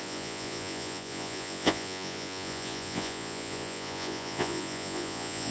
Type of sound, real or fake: fake